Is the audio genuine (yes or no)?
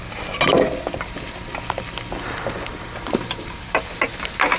yes